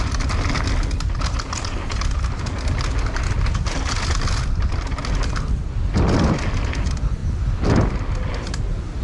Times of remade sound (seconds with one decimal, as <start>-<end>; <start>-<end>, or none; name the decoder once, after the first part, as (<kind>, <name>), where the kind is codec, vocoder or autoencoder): none